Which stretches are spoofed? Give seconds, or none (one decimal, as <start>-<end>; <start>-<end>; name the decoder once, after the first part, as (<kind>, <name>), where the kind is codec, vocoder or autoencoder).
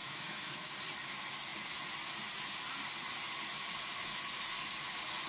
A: 0.0-0.7 (autoencoder, DAC-VAE)